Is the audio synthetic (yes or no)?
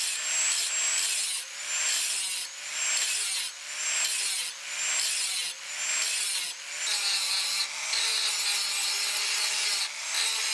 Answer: no